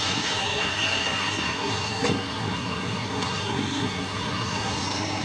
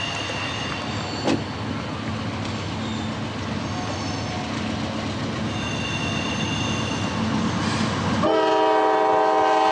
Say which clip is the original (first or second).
second